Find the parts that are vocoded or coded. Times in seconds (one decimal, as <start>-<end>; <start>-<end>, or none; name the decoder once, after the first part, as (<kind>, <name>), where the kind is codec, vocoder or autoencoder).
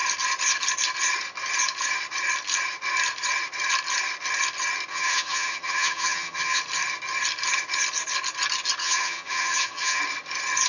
4.9-6.6 (vocoder, HiFi-GAN); 8.8-10.0